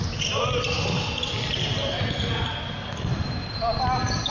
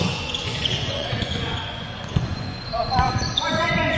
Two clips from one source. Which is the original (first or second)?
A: first